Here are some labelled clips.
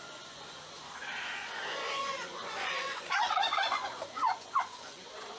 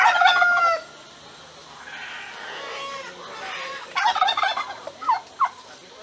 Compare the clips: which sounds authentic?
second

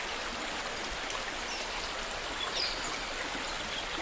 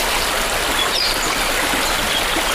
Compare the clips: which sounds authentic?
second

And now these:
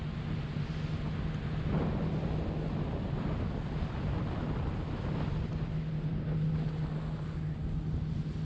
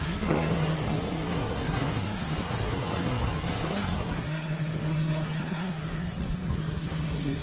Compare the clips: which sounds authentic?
first